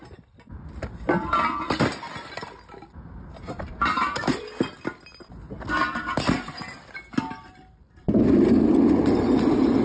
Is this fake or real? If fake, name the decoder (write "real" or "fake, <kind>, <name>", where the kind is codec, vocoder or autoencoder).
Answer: real